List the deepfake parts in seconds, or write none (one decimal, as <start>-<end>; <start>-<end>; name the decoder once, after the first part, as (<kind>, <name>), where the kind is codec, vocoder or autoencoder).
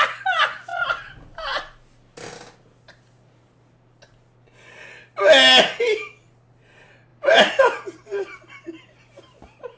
none